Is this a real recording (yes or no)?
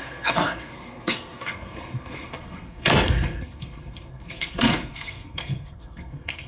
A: no